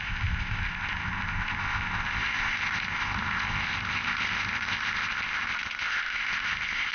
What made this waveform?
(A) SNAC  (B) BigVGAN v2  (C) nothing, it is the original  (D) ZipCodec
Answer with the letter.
D